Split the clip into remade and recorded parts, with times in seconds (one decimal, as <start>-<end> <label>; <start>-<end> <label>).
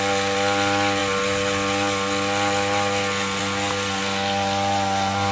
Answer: 0.0-5.3 recorded